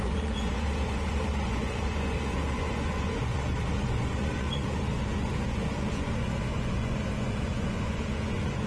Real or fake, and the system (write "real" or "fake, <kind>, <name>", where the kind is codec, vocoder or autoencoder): fake, vocoder, Vocos